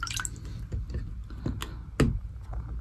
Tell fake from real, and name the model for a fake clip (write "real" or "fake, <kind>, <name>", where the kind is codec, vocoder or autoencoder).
real